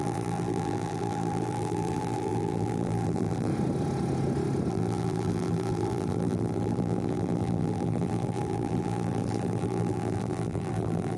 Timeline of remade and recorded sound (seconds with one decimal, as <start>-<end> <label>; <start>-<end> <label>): 0.0-3.5 remade; 3.5-4.7 recorded; 4.7-11.2 remade